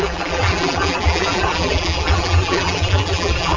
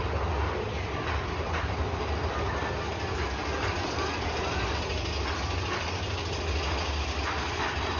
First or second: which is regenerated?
first